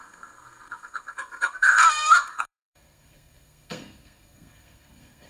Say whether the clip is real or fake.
fake